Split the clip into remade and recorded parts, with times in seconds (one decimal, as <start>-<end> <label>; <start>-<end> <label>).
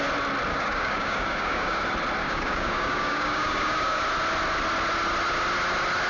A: 0.0-0.5 recorded; 0.5-1.8 remade; 1.8-2.2 recorded; 2.2-4.0 remade; 4.0-6.1 recorded